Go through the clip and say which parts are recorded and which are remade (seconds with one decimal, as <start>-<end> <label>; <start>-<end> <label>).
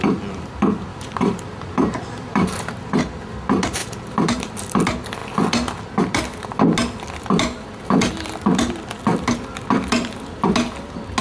0.0-0.9 recorded; 0.9-3.0 remade; 3.0-3.8 recorded; 3.8-4.5 remade; 4.5-11.2 recorded